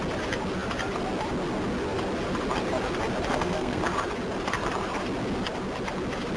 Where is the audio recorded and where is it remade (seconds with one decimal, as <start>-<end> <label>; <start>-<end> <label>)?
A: 0.0-3.3 recorded; 3.3-3.8 remade; 3.8-6.4 recorded